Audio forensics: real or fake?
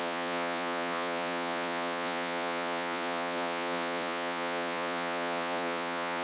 fake